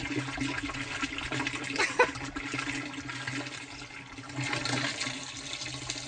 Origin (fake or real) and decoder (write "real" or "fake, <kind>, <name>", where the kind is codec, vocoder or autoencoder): real